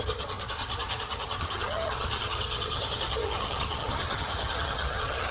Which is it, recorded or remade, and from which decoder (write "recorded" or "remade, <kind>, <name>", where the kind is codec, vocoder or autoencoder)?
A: remade, vocoder, HiFi-GAN